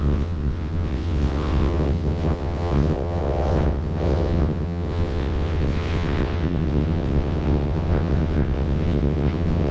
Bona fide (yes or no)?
no